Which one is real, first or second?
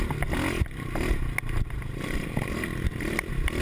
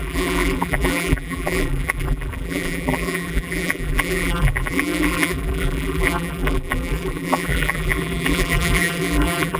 first